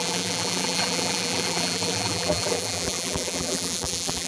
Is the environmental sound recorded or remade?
remade